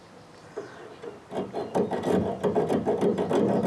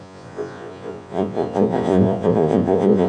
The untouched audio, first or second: first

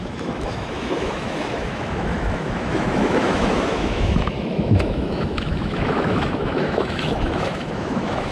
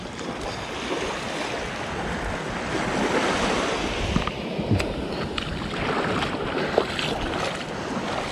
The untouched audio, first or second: second